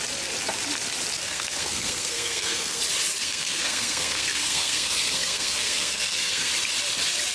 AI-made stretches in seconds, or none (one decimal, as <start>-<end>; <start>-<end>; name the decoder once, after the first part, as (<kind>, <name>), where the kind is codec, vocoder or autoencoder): 1.2-2.8 (codec, SNAC); 3.2-6.5